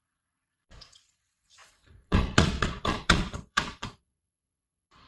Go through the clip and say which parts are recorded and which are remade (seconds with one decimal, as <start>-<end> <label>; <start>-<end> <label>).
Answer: 0.0-5.1 remade